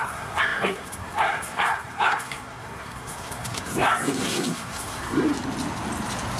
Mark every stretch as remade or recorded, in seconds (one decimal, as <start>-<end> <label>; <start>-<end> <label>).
0.0-5.3 remade; 5.3-6.4 recorded